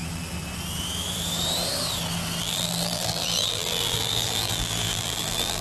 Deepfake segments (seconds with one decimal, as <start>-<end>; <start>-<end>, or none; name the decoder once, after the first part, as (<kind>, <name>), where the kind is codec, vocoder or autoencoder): 2.4-5.6 (vocoder, BigVGAN v2)